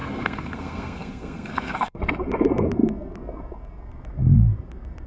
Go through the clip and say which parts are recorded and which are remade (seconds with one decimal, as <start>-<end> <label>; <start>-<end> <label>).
0.0-2.0 remade; 2.0-5.1 recorded